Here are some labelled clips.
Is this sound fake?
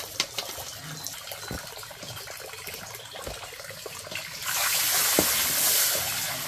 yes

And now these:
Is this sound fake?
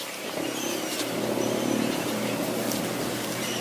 yes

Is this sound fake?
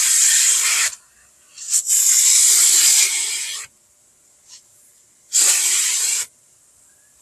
no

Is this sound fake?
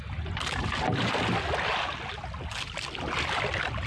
no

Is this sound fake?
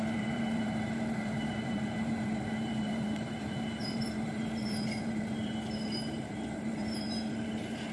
yes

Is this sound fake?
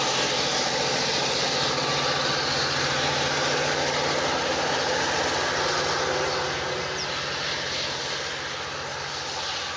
no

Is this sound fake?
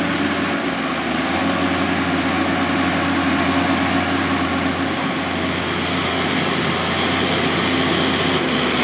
no